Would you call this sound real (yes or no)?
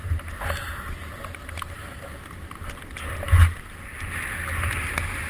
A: yes